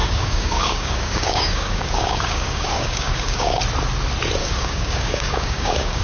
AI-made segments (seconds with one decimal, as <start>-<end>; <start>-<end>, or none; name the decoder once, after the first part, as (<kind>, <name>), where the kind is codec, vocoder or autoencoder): 0.0-3.6 (codec, DAC); 4.4-6.0